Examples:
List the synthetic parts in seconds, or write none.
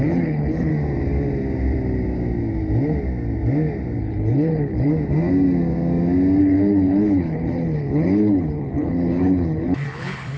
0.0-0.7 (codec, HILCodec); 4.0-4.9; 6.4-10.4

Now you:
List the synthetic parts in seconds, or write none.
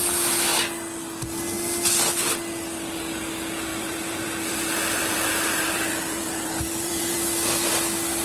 3.7-7.7 (vocoder, BigVGAN v2)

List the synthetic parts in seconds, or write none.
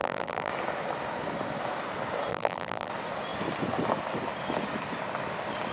0.0-0.5 (vocoder, BigVGAN v2); 2.3-2.9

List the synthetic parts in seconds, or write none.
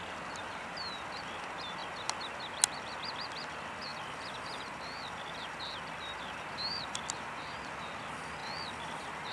3.9-7.1 (vocoder, BigVGAN v2); 8.4-9.3